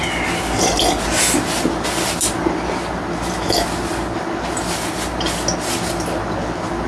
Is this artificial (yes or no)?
no